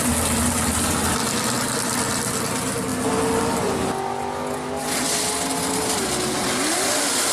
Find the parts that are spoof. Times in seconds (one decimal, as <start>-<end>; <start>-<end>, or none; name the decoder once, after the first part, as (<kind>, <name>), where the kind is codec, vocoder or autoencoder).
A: none